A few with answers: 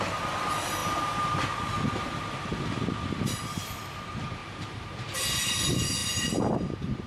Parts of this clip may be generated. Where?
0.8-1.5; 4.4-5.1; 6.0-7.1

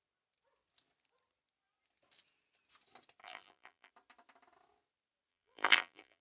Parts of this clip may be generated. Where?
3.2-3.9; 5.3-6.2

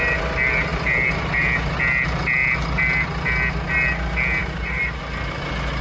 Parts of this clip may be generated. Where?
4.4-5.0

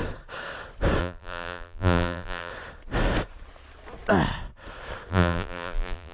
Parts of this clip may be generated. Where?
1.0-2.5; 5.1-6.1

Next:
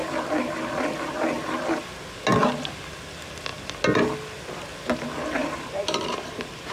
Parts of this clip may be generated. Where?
5.4-6.3